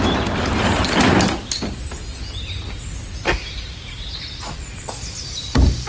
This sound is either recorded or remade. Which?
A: recorded